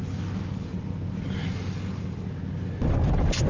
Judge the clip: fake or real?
real